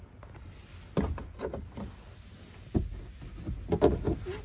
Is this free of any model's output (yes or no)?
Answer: yes